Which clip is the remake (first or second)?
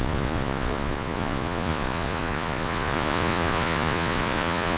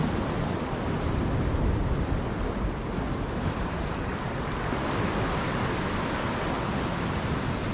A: first